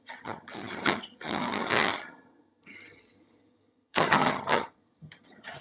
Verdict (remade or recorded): remade